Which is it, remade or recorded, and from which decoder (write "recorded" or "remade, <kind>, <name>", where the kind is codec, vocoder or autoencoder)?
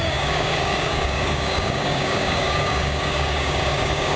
remade, codec, DAC